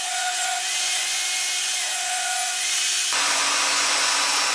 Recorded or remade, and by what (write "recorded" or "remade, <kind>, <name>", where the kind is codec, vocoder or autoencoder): remade, vocoder, Vocos